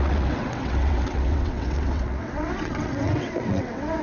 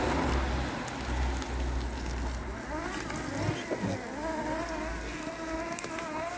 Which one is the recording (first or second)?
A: second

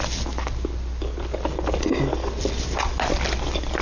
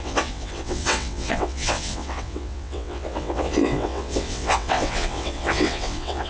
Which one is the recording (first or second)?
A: first